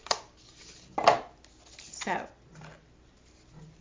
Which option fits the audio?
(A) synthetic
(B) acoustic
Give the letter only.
B